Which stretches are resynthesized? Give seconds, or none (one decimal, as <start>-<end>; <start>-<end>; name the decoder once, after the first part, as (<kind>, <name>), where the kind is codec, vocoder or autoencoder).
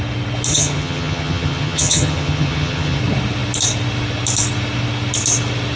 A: 0.5-3.0 (vocoder, HiFi-GAN)